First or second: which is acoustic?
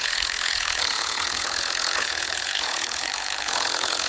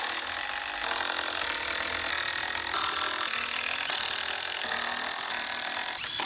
second